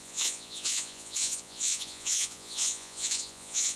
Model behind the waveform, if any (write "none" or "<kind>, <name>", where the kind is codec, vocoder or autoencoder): vocoder, Vocos